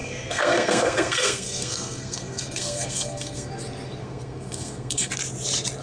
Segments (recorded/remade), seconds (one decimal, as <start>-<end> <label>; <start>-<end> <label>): 0.0-3.5 remade; 3.5-4.0 recorded; 4.0-5.1 remade; 5.1-5.8 recorded